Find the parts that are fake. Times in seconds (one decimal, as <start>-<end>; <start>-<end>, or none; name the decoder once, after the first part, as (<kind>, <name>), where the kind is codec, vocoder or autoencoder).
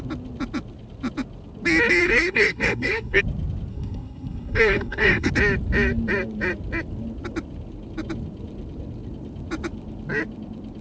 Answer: 2.0-3.2 (codec, SNAC); 3.7-5.3